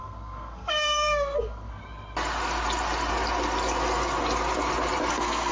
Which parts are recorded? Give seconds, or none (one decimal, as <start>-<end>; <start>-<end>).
1.8-5.1